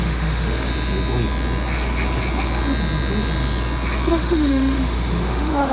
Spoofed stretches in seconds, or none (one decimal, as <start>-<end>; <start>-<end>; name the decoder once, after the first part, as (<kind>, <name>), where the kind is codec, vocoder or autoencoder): 0.0-0.7 (autoencoder, DAC-VAE); 4.1-5.7